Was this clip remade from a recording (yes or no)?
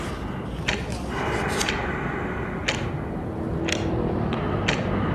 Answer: no